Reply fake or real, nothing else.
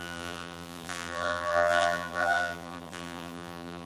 fake